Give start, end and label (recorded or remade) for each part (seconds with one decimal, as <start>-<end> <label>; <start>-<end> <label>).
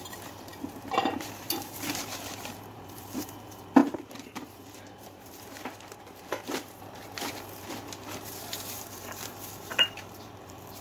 0.0-10.8 remade